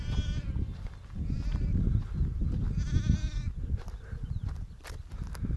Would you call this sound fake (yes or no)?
no